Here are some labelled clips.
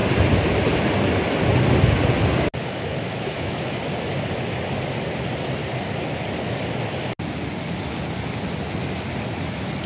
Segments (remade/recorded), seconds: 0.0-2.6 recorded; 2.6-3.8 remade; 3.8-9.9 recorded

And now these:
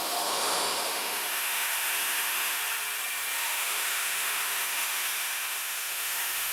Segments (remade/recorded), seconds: 0.0-2.6 remade; 2.6-3.4 recorded; 3.4-6.5 remade

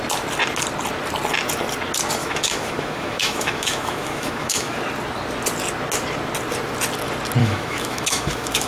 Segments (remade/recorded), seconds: 0.0-2.2 recorded; 2.2-4.8 remade; 4.8-7.4 recorded; 7.4-8.7 remade

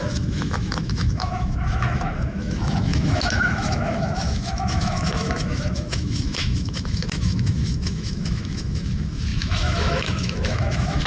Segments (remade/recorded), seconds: 0.0-11.1 remade

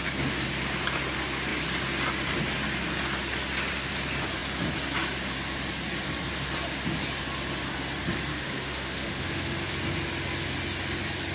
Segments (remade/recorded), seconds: 0.0-8.3 recorded; 8.3-9.7 remade; 9.7-11.3 recorded